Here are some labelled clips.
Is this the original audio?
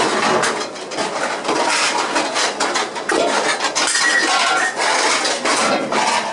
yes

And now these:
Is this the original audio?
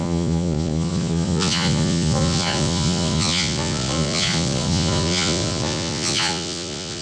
no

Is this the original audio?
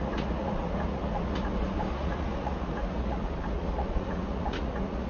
no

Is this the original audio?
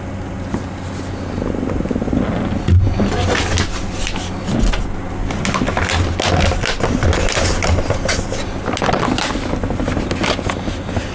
yes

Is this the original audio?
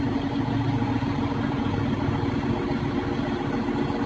yes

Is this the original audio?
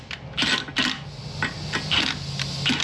yes